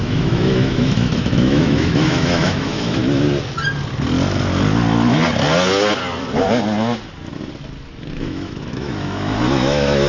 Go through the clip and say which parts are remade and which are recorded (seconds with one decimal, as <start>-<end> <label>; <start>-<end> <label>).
0.0-3.0 remade; 3.0-8.1 recorded; 8.1-10.1 remade